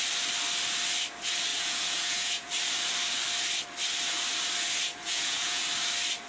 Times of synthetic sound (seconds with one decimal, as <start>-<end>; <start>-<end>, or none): 1.5-2.5; 4.9-5.6